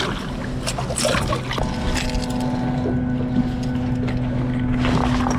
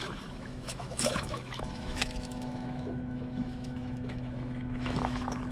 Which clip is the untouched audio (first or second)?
first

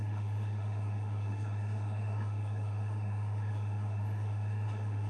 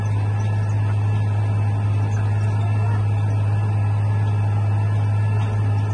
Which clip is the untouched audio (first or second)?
second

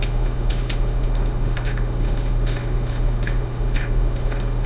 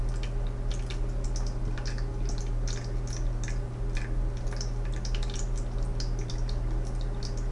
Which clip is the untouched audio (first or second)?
second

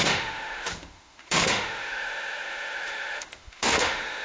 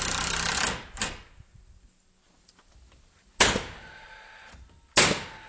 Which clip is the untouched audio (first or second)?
second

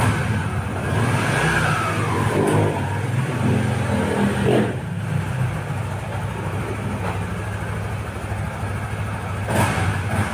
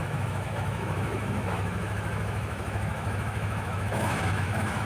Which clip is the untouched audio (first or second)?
first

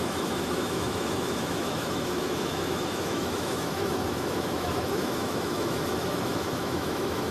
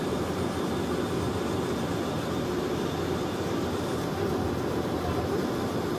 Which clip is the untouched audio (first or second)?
second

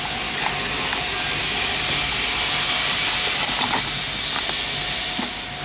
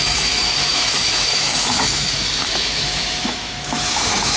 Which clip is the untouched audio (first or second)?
first